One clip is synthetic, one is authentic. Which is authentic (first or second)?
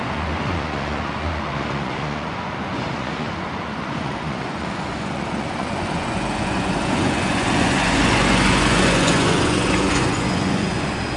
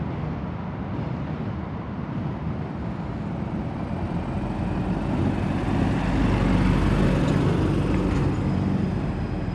second